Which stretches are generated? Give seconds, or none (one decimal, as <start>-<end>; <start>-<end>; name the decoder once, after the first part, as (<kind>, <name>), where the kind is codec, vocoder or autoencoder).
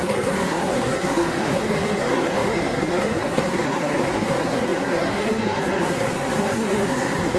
0.0-7.4 (codec, SNAC)